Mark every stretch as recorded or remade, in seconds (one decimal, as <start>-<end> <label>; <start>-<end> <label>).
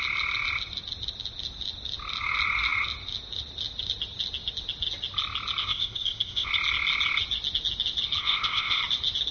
0.0-5.6 recorded; 5.6-6.5 remade; 6.5-8.2 recorded; 8.2-8.8 remade; 8.8-9.3 recorded